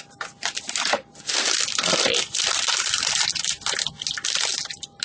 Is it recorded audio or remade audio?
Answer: recorded